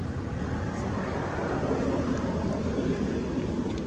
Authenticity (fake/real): fake